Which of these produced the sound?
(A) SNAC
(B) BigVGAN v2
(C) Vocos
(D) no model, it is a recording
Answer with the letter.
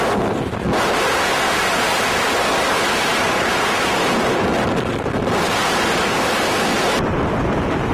D